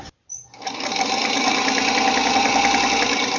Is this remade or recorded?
recorded